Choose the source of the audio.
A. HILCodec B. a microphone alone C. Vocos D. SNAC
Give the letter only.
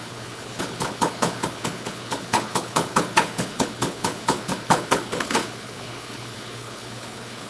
A